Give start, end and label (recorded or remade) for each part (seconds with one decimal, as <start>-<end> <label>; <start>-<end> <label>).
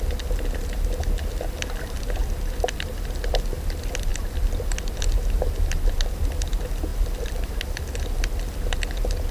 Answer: 0.0-2.2 recorded; 2.2-2.9 remade; 2.9-4.1 recorded; 4.1-5.0 remade; 5.0-6.9 recorded; 6.9-7.8 remade; 7.8-9.3 recorded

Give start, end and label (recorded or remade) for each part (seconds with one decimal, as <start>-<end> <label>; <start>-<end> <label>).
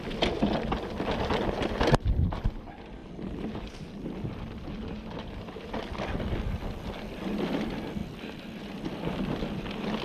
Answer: 0.0-10.0 recorded